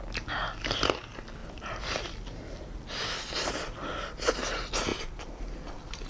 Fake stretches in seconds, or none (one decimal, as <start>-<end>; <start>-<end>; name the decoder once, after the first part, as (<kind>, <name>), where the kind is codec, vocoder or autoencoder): 1.4-4.5 (vocoder, BigVGAN v2); 4.9-6.1